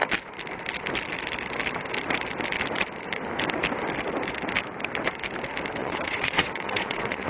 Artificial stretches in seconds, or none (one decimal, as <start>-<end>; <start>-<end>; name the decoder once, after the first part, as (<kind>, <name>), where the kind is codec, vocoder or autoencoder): 5.8-7.3 (vocoder, WaveNeXt)